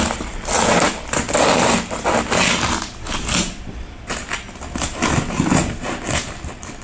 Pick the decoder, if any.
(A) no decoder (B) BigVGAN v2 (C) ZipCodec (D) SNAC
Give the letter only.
A